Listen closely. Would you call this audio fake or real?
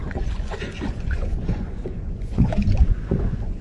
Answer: fake